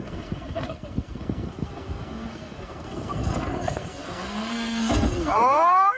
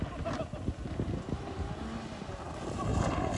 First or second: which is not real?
first